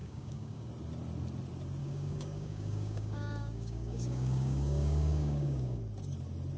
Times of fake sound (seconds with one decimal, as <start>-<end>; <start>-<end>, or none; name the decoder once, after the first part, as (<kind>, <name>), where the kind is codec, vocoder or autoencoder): 0.0-0.7 (codec, DAC); 1.8-5.8

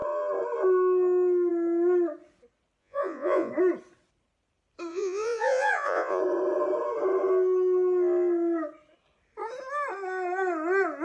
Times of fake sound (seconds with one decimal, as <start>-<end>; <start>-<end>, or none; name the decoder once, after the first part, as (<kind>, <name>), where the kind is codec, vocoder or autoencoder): 2.8-3.5 (vocoder, Vocos); 4.9-6.2

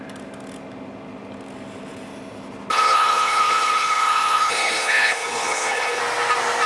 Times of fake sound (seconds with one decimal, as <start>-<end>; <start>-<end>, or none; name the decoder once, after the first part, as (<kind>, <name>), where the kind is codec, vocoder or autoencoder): 2.7-6.0 (codec, HILCodec)